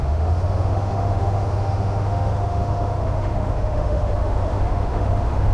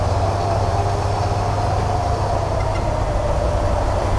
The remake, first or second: first